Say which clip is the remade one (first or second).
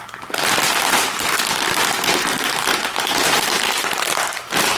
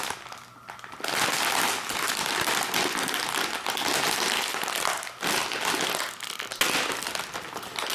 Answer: first